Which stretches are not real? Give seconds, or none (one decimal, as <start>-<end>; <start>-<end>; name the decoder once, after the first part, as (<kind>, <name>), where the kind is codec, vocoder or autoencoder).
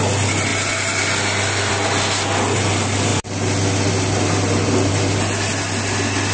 none